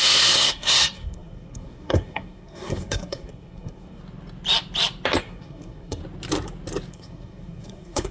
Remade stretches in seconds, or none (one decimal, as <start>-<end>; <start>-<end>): 0.0-4.0; 5.2-6.0; 6.9-8.1